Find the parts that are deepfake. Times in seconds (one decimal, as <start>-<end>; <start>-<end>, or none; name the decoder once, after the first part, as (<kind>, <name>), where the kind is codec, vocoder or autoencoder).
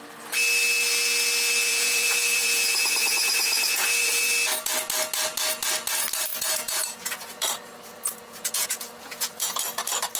1.7-4.3 (vocoder, Vocos); 6.3-9.6